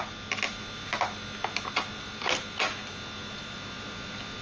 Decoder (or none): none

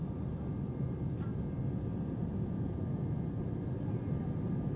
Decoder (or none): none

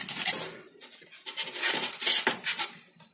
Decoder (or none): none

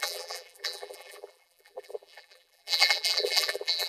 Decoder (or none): vocoder, BigVGAN v2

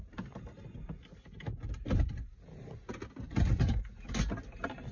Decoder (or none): none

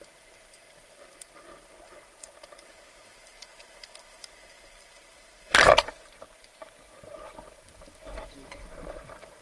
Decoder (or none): vocoder, BigVGAN v2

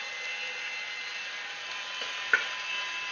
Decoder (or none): none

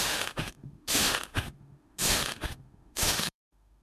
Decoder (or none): autoencoder, DAC-VAE